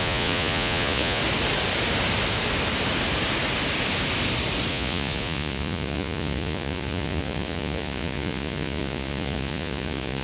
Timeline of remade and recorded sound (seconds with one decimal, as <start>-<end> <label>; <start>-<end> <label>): 0.0-1.2 remade; 1.2-4.7 recorded; 4.7-10.2 remade